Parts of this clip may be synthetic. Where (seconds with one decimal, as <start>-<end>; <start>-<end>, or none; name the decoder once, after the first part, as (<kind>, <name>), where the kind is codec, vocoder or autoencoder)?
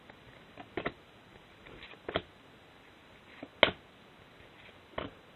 1.3-1.9 (vocoder, BigVGAN v2)